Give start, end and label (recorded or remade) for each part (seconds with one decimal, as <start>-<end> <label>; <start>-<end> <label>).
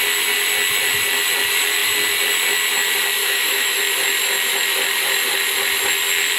0.0-3.2 recorded; 3.2-3.8 remade; 3.8-6.4 recorded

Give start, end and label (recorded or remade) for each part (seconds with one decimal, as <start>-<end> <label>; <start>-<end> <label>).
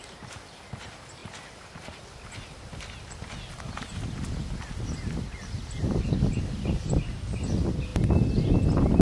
0.0-9.0 recorded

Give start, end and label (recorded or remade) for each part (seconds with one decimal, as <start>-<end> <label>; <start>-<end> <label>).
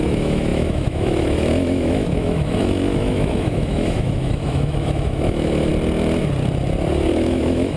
0.0-5.7 remade; 5.7-7.1 recorded; 7.1-7.8 remade